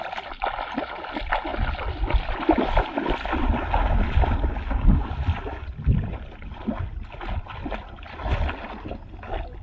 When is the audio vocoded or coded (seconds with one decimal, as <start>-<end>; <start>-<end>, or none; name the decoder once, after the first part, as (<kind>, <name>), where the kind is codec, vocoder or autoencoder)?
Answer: none